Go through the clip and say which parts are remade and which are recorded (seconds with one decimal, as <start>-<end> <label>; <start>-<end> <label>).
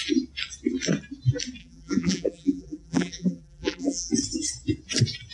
0.0-1.6 recorded; 1.6-4.1 remade; 4.1-5.3 recorded